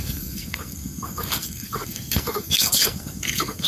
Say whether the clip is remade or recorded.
remade